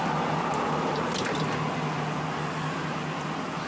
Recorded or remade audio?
recorded